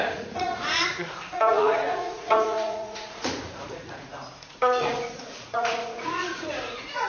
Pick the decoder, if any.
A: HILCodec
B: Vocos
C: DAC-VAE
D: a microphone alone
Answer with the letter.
B